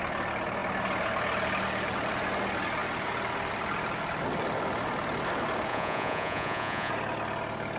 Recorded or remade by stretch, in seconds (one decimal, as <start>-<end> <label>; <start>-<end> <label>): 0.0-5.7 recorded; 5.7-6.9 remade; 6.9-7.8 recorded